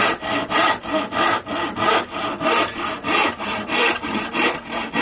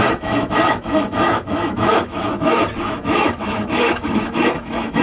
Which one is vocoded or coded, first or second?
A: second